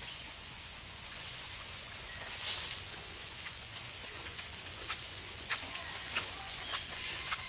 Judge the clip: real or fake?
fake